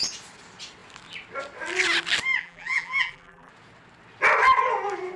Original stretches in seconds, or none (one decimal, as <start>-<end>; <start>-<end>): 0.0-2.4; 3.5-5.2